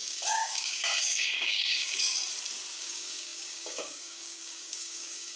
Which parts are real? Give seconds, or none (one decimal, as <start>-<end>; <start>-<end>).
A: 2.2-2.8